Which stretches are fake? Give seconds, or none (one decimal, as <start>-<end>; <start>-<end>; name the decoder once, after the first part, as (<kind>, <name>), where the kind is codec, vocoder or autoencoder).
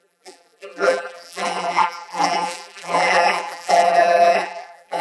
0.0-5.0 (vocoder, BigVGAN v2)